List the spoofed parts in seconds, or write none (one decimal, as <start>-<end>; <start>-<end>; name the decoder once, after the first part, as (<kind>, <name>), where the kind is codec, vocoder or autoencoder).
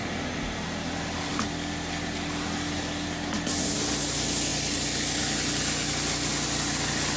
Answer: none